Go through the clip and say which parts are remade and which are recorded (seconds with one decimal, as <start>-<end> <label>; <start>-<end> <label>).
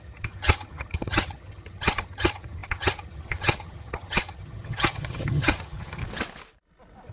0.0-6.0 remade; 6.0-7.1 recorded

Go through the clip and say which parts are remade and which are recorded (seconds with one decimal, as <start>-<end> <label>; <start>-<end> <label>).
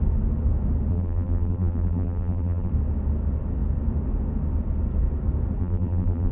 0.0-0.9 recorded; 0.9-2.7 remade; 2.7-5.6 recorded; 5.6-6.3 remade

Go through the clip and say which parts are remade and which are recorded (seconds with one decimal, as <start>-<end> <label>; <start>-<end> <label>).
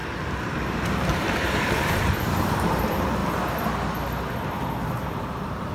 0.0-0.5 recorded; 0.5-3.2 remade; 3.2-4.9 recorded; 4.9-5.7 remade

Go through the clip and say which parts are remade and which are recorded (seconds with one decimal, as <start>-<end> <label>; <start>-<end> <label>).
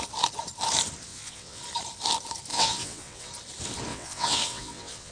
0.0-1.1 recorded; 1.1-1.6 remade; 1.6-2.5 recorded; 2.5-3.3 remade; 3.3-3.9 recorded; 3.9-5.1 remade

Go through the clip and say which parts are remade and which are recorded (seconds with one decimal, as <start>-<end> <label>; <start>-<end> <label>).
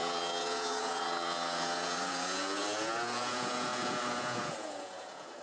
0.0-5.4 remade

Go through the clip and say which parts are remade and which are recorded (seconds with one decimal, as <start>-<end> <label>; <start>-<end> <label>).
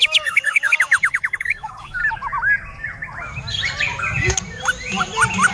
0.0-2.0 remade; 2.0-5.5 recorded